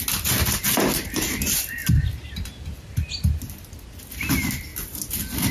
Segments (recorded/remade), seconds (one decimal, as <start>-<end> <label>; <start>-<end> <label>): 0.0-1.8 recorded; 1.8-3.6 remade; 3.6-4.7 recorded; 4.7-5.5 remade

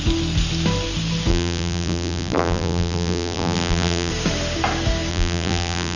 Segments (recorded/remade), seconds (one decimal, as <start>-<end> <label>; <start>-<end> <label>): 0.0-1.3 recorded; 1.3-4.1 remade; 4.1-5.1 recorded; 5.1-6.0 remade

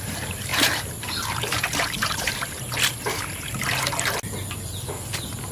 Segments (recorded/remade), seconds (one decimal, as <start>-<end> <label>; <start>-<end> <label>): 0.0-0.5 recorded; 0.5-2.6 remade; 2.6-5.5 recorded

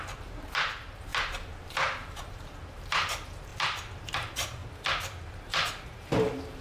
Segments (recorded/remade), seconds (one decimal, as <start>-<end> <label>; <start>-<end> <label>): 0.0-3.5 remade; 3.5-4.0 recorded; 4.0-4.6 remade; 4.6-5.2 recorded; 5.2-6.6 remade